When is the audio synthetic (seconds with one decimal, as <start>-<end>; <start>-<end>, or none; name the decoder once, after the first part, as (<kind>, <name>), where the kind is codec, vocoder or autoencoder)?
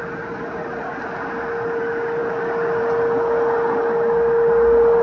none